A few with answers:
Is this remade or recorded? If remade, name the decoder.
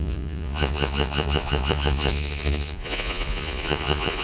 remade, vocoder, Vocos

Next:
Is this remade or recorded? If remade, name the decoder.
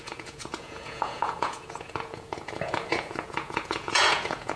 remade, vocoder, Vocos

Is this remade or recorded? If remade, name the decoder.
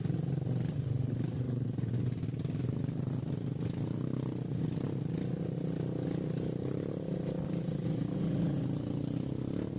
recorded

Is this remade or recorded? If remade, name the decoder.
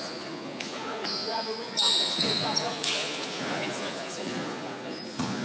remade, vocoder, Vocos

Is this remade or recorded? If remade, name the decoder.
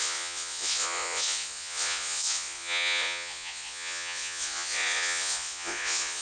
remade, vocoder, Vocos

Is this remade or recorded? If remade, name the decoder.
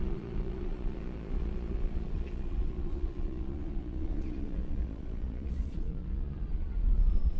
remade, vocoder, Vocos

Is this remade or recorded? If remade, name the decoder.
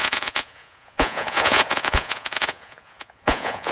remade, vocoder, Vocos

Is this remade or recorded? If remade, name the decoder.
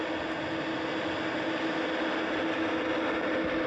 recorded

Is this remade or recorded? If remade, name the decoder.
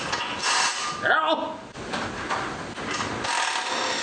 recorded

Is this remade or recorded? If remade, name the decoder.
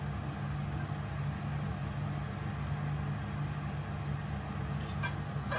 recorded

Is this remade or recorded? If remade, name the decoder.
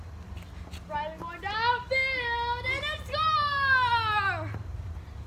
recorded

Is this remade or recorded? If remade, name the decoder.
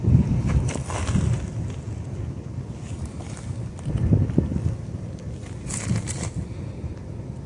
recorded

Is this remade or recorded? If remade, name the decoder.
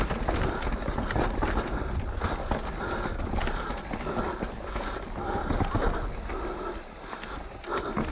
recorded